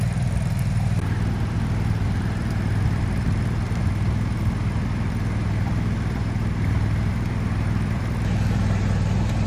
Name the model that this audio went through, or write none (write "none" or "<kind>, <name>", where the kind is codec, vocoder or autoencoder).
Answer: vocoder, BigVGAN v2